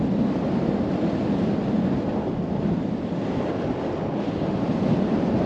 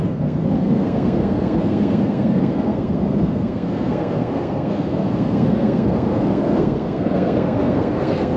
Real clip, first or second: first